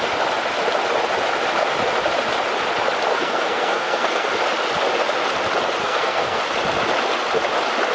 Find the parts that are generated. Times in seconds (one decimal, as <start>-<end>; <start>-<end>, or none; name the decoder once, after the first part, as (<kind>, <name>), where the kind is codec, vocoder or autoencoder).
3.1-4.3 (codec, SNAC); 5.8-6.4